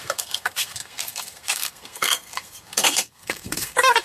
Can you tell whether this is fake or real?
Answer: fake